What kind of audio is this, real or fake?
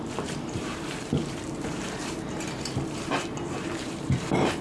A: fake